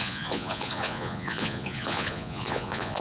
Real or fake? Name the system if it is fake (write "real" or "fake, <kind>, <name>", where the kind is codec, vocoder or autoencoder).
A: fake, vocoder, Vocos